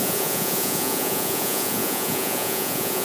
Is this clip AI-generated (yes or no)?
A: yes